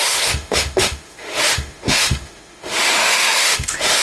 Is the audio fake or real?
fake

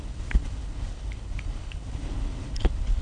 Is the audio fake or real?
fake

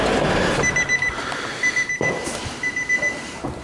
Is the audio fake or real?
real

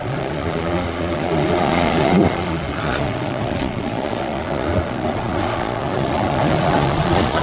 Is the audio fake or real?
fake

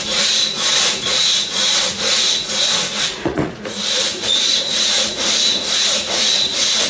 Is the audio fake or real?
fake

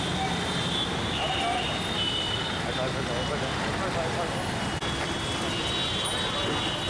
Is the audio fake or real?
real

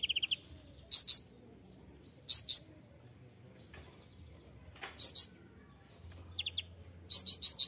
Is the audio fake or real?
real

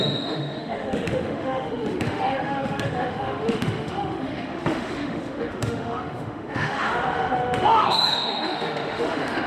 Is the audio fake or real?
fake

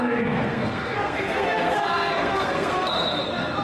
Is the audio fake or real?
fake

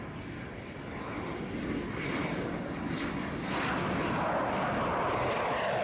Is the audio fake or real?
real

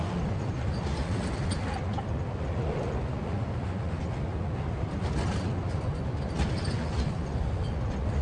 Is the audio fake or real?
real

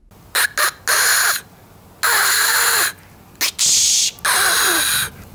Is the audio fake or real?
real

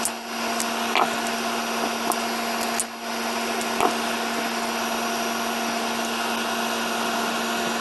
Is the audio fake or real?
real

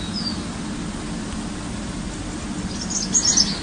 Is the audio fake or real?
real